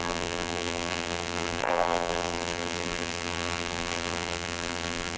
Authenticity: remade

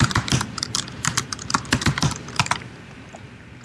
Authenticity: remade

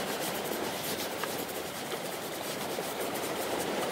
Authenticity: remade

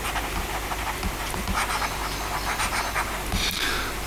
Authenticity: recorded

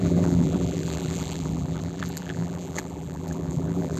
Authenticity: remade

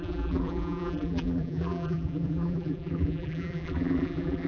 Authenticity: remade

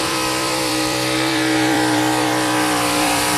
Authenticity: remade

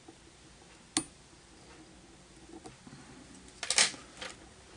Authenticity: recorded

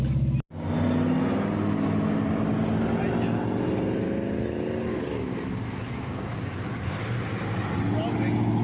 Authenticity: recorded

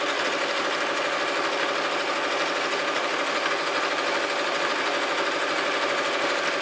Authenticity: recorded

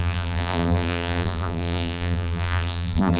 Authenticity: remade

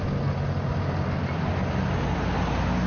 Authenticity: recorded